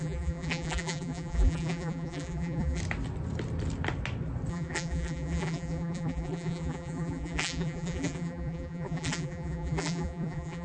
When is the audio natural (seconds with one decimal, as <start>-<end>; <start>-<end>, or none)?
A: 2.8-4.5